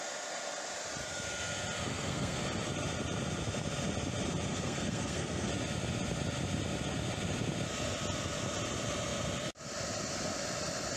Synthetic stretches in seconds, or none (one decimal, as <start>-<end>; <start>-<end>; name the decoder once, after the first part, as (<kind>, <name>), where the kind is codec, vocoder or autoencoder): 1.9-2.4 (codec, SNAC); 4.5-5.5